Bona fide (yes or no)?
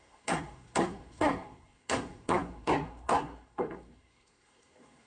no